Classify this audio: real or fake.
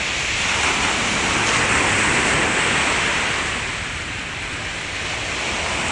real